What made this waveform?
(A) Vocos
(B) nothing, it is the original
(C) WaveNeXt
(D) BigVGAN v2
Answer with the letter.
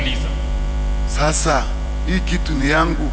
A